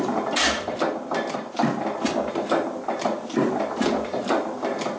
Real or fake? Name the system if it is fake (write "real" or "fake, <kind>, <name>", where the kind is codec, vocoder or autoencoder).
real